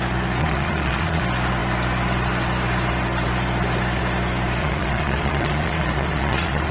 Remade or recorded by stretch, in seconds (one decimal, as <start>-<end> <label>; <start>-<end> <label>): 0.0-0.4 recorded; 0.4-1.2 remade; 1.2-4.6 recorded; 4.6-6.7 remade